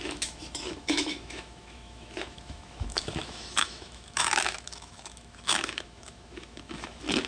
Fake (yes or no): yes